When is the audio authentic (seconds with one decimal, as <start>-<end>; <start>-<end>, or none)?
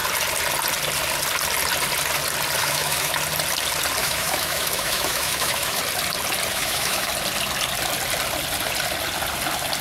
0.0-2.6; 3.1-4.0; 5.8-6.5; 7.1-9.8